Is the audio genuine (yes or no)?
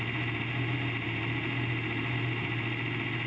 yes